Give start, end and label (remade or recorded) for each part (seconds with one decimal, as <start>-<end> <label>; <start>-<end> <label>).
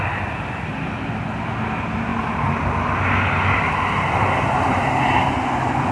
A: 0.0-5.9 recorded